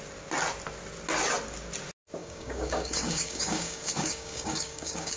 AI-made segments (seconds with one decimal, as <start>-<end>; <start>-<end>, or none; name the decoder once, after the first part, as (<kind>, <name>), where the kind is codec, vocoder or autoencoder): 2.2-5.2 (codec, DAC)